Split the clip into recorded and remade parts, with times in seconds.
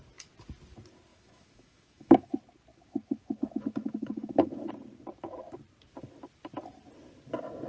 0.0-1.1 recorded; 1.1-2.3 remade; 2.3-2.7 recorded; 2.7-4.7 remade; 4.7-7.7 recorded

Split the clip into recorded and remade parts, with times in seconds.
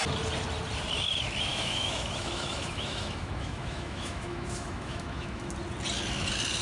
0.0-1.5 recorded; 1.5-5.5 remade; 5.5-6.6 recorded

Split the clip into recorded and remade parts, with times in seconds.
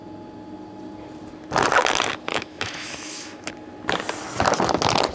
0.0-2.3 recorded; 2.3-3.5 remade; 3.5-5.1 recorded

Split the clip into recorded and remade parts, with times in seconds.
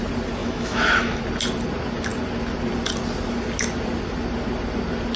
0.0-0.4 recorded; 0.4-1.2 remade; 1.2-5.2 recorded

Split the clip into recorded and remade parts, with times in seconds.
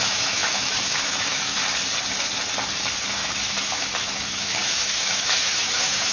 0.0-1.6 remade; 1.6-3.1 recorded; 3.1-6.1 remade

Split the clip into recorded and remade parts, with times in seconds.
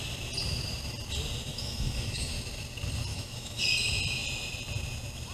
0.0-1.5 recorded; 1.5-2.3 remade; 2.3-3.1 recorded; 3.1-3.6 remade; 3.6-5.3 recorded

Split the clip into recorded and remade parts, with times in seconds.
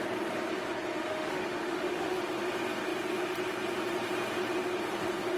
0.0-0.9 recorded; 0.9-2.2 remade; 2.2-5.4 recorded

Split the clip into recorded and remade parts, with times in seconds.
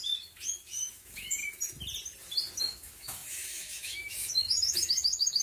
0.0-1.4 remade; 1.4-2.6 recorded; 2.6-5.4 remade